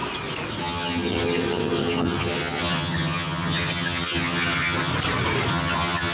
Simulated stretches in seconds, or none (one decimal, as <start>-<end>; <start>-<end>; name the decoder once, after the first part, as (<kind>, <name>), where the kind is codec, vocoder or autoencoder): 0.6-4.9 (vocoder, HiFi-GAN); 5.5-6.1